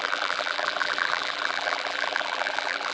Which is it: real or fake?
fake